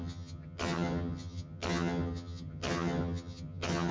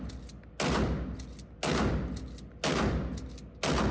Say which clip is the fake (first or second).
first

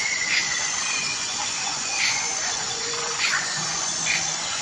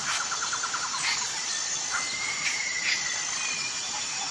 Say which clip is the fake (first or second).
first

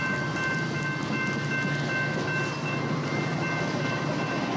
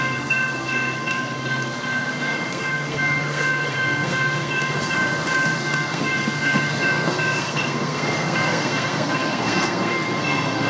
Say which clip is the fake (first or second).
second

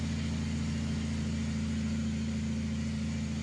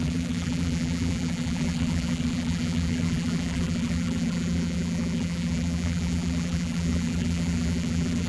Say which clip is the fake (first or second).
second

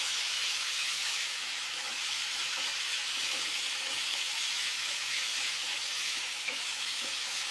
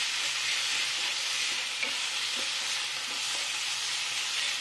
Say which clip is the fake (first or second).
first